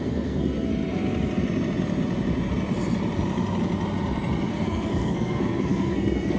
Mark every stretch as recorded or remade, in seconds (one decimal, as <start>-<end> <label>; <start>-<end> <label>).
0.0-0.7 remade; 0.7-4.5 recorded; 4.5-6.4 remade